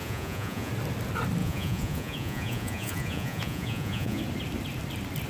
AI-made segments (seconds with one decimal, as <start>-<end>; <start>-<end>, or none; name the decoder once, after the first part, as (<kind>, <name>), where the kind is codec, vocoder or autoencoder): 0.0-0.7 (vocoder, Vocos); 1.4-4.2